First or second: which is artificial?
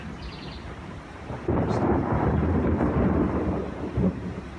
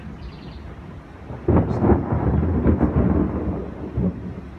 first